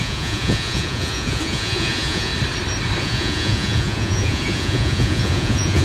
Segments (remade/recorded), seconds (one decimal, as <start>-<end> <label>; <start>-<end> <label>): 0.0-2.3 remade; 2.3-3.0 recorded; 3.0-5.8 remade